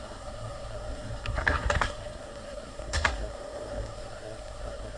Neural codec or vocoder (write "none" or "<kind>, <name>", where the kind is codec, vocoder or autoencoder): codec, SNAC